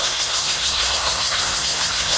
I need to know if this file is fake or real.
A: fake